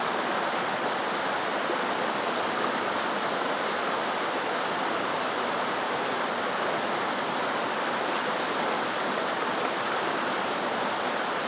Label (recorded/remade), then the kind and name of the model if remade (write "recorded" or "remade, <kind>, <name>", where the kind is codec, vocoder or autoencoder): recorded